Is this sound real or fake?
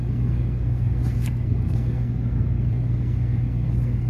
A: fake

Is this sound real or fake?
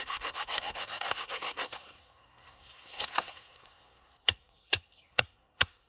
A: fake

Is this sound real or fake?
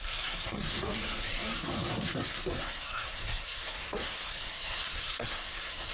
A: fake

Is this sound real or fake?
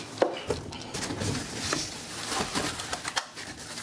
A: real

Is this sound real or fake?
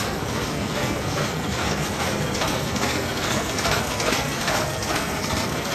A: fake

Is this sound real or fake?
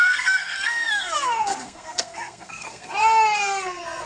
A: fake